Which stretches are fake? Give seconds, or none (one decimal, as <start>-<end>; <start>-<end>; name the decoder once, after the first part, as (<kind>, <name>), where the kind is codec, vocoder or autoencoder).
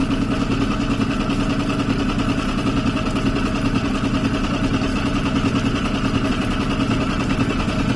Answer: none